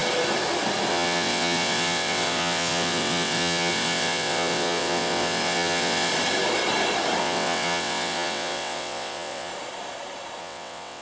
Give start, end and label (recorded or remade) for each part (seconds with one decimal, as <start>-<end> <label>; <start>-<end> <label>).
0.0-0.9 recorded; 0.9-6.1 remade; 6.1-7.2 recorded; 7.2-9.5 remade; 9.5-10.4 recorded; 10.4-11.0 remade